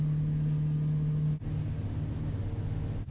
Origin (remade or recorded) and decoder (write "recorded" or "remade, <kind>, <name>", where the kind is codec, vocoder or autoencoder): recorded